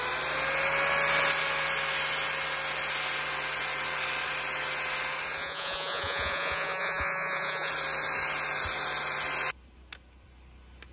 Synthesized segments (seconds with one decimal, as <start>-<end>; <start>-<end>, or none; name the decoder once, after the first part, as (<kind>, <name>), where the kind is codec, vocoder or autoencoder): 5.4-7.7 (vocoder, Vocos)

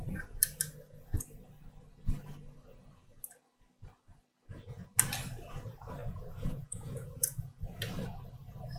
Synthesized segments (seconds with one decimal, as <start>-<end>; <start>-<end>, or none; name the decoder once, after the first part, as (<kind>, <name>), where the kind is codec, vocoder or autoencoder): 6.0-7.6 (vocoder, Vocos)